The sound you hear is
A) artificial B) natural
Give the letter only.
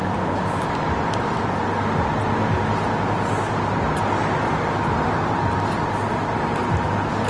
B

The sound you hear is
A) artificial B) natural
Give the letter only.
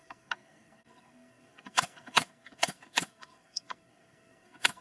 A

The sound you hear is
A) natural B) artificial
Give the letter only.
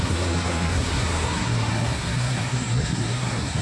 B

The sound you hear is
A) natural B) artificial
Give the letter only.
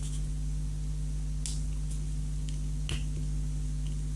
A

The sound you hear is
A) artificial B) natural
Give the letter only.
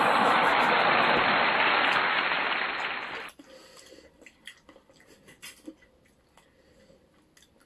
B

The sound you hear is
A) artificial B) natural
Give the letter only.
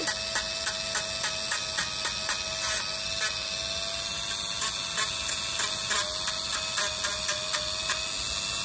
B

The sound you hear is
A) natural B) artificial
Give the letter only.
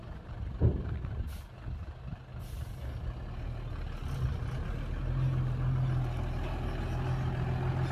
A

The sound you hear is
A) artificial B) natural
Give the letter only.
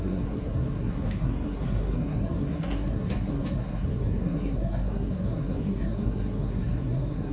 A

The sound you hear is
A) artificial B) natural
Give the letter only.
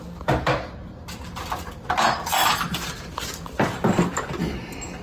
B